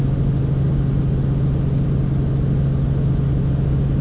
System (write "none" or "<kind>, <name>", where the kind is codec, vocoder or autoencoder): none